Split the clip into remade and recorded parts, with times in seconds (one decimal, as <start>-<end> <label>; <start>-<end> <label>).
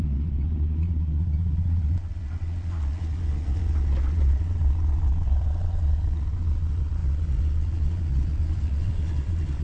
0.0-9.6 remade